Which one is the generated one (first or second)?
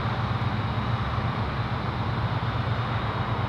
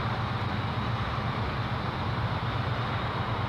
second